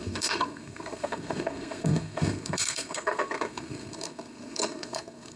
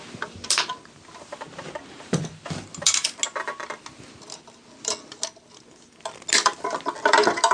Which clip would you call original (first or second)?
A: second